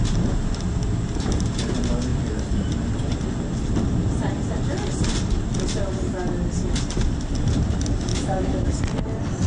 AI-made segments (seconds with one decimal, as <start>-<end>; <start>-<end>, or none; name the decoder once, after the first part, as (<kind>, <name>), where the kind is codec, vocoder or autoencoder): 8.1-8.8 (autoencoder, DAC-VAE)